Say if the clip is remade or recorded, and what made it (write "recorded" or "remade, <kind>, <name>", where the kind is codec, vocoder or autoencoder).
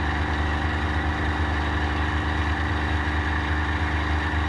recorded